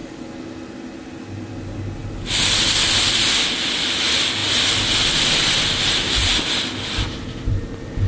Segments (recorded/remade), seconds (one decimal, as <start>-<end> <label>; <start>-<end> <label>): 0.0-8.1 recorded